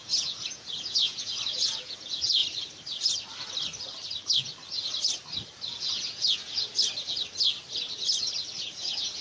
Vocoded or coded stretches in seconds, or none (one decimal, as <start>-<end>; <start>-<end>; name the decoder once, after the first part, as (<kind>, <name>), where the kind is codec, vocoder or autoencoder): 0.0-2.4 (vocoder, Vocos); 5.8-6.7; 8.6-9.2